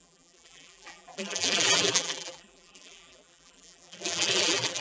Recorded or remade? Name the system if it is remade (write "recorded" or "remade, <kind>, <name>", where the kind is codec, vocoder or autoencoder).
remade, vocoder, BigVGAN v2